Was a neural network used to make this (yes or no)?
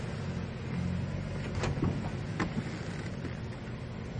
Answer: no